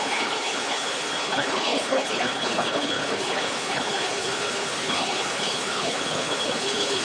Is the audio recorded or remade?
remade